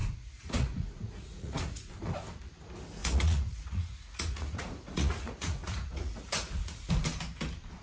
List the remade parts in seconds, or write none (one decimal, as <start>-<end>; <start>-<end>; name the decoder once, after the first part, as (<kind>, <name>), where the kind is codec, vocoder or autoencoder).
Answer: 0.0-1.9 (vocoder, Vocos); 3.0-6.9